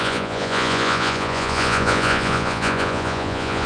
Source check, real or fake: fake